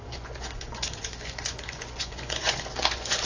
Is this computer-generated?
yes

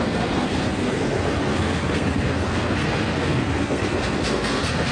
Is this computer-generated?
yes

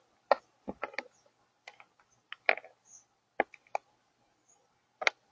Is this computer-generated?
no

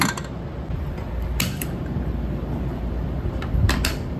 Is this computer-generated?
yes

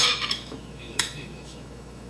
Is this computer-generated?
yes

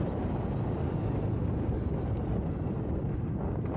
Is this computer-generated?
no